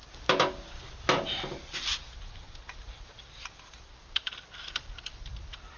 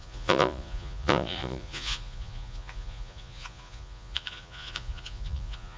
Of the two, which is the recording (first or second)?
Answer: first